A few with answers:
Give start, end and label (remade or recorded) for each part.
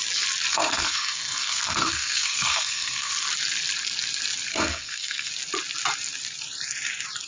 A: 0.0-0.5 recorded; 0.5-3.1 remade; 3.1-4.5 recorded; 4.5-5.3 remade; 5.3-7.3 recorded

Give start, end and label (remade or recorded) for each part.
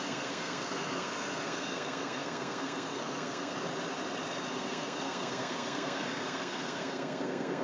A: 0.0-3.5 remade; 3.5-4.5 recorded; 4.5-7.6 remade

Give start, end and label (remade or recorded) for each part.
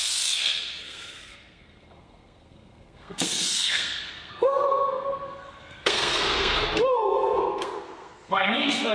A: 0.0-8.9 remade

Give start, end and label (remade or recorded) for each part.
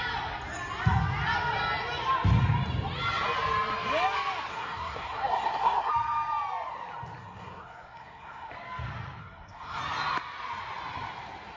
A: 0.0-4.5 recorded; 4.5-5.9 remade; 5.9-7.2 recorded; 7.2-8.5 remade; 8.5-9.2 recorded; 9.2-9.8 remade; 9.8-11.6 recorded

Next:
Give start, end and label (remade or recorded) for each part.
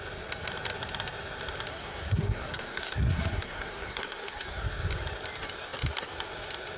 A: 0.0-1.7 recorded; 1.7-4.7 remade; 4.7-6.8 recorded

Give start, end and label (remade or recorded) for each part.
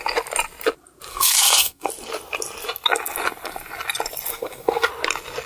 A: 0.0-1.1 recorded; 1.1-1.9 remade; 1.9-4.3 recorded; 4.3-4.9 remade; 4.9-5.5 recorded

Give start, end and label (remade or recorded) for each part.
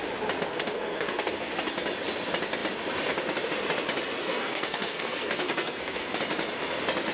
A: 0.0-0.5 recorded; 0.5-1.5 remade; 1.5-4.2 recorded; 4.2-6.2 remade; 6.2-7.1 recorded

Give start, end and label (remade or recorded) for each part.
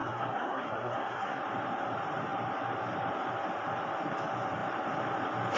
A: 0.0-1.4 remade; 1.4-5.6 recorded